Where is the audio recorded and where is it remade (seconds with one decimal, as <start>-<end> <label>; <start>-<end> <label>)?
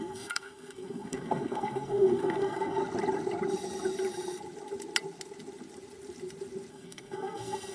0.0-2.8 remade; 2.8-6.7 recorded; 6.7-7.7 remade